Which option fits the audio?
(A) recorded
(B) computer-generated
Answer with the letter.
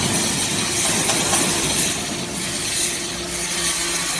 A